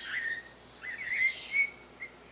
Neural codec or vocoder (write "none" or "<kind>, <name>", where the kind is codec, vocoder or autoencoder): none